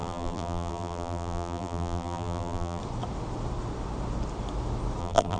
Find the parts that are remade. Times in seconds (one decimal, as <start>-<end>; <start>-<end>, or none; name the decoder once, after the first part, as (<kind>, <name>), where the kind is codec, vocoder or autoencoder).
0.0-2.8 (vocoder, BigVGAN v2); 5.0-5.4